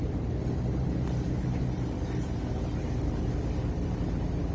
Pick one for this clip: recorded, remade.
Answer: recorded